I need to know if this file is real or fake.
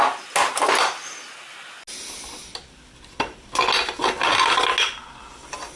real